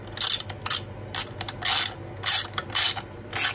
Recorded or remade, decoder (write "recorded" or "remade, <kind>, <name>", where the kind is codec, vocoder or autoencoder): recorded